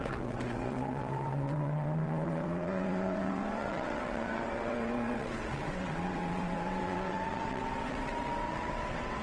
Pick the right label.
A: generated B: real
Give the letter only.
A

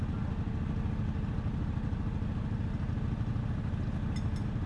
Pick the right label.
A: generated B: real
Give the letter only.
B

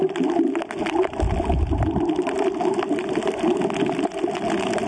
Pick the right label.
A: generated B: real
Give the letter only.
B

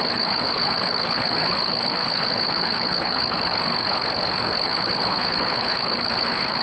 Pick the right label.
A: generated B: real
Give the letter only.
A